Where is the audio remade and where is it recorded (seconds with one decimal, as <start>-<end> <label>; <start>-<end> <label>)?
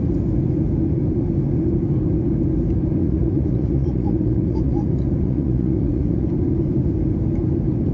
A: 0.0-3.0 recorded; 3.0-6.3 remade; 6.3-7.9 recorded